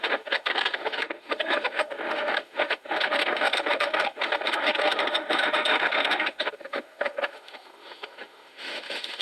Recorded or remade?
remade